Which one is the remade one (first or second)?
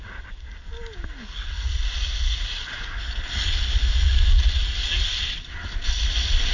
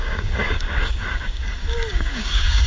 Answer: second